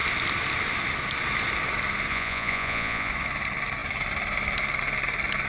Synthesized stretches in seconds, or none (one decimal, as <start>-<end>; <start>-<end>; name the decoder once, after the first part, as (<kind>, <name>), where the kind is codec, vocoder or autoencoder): 2.1-3.1 (vocoder, Vocos)